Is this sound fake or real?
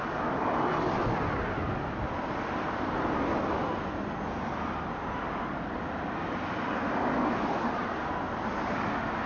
real